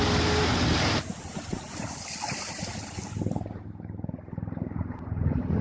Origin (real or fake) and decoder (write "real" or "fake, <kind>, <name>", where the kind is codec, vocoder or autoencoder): real